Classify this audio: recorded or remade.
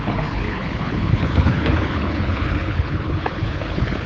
remade